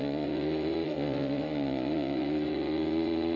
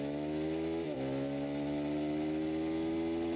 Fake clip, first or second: first